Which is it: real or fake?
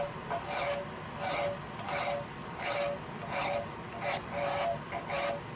real